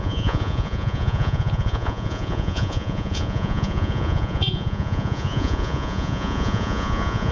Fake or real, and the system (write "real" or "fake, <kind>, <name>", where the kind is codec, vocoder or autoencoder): fake, vocoder, Vocos